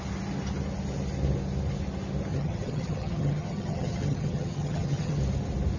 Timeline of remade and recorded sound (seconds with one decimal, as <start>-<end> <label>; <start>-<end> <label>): 0.0-2.3 recorded; 2.3-5.2 remade; 5.2-5.8 recorded